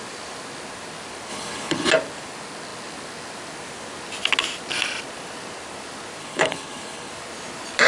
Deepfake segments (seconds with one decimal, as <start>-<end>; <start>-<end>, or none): 1.3-1.9; 6.2-7.1